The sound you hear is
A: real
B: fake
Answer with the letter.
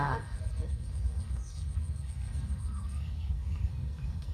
B